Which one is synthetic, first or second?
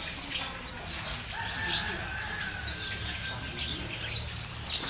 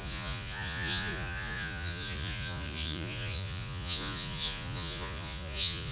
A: second